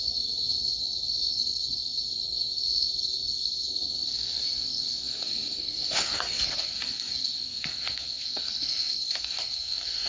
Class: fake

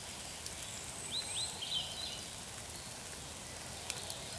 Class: real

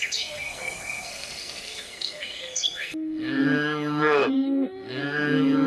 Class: fake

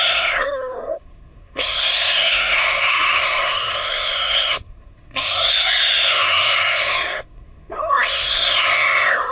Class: fake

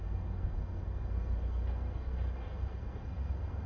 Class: fake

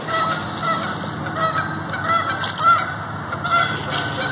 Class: real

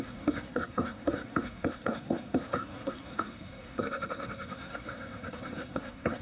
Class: fake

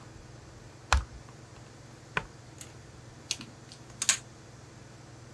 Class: real